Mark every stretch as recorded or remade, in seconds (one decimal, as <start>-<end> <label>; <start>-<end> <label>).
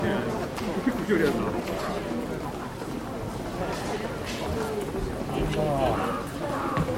0.0-7.0 recorded